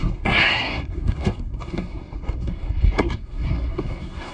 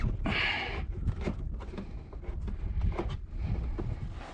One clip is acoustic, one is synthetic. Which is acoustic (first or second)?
second